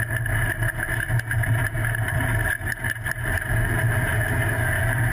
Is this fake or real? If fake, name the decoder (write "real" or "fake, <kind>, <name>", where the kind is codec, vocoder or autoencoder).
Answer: real